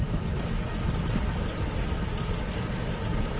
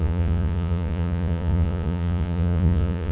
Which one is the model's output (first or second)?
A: second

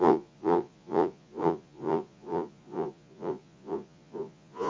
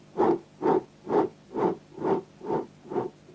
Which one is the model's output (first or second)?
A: first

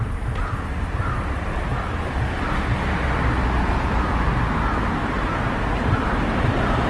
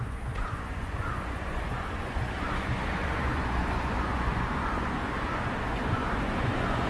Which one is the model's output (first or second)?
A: second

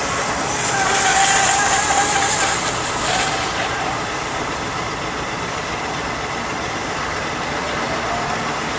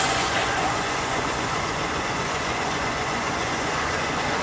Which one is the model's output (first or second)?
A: second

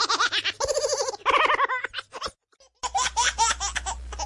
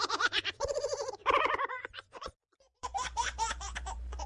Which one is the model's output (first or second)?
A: second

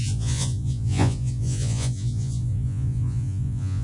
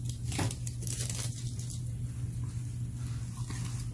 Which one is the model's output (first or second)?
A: first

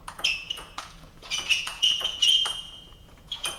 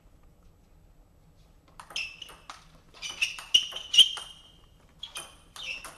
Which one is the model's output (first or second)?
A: first